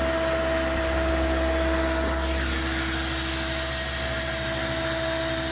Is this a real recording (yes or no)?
yes